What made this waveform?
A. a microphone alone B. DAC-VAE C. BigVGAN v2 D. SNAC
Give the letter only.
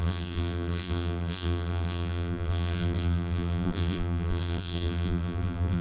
C